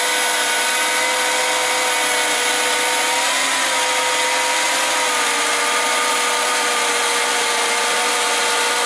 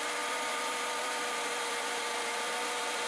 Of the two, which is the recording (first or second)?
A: first